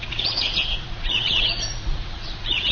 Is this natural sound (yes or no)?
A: no